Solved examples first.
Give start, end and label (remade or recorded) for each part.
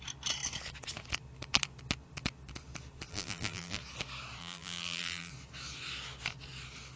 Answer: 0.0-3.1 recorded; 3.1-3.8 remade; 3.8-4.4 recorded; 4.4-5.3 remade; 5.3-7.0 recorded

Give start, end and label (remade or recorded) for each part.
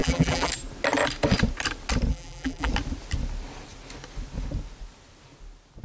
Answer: 0.0-0.5 remade; 0.5-2.1 recorded; 2.1-2.7 remade; 2.7-5.8 recorded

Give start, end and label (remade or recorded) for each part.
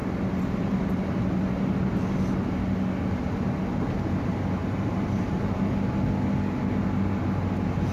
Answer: 0.0-4.6 recorded; 4.6-5.7 remade; 5.7-7.9 recorded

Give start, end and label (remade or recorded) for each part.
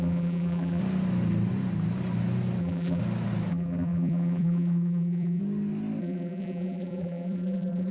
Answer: 0.0-0.8 remade; 0.8-2.6 recorded; 2.6-3.0 remade; 3.0-3.5 recorded; 3.5-5.4 remade; 5.4-6.0 recorded; 6.0-7.9 remade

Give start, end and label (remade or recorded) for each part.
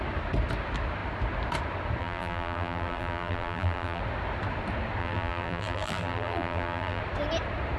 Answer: 0.0-2.0 recorded; 2.0-4.0 remade; 4.0-5.0 recorded; 5.0-7.0 remade; 7.0-7.8 recorded